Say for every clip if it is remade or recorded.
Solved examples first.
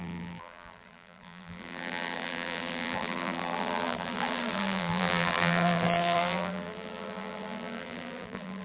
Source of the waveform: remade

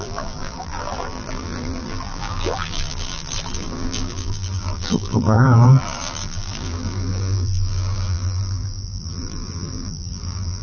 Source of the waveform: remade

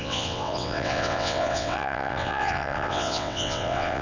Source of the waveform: remade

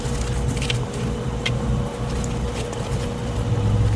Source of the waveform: recorded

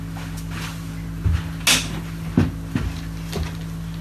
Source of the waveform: recorded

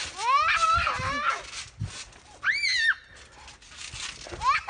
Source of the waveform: recorded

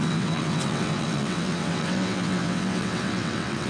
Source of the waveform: remade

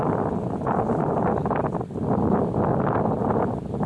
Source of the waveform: recorded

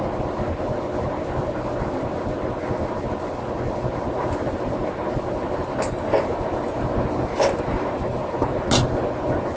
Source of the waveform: recorded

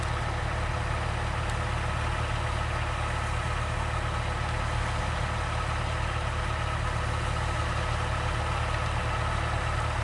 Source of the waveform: recorded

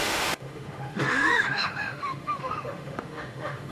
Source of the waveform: remade